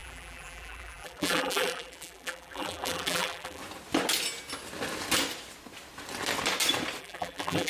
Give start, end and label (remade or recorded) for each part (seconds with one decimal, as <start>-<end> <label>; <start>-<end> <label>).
0.0-3.6 remade; 3.6-7.0 recorded; 7.0-7.7 remade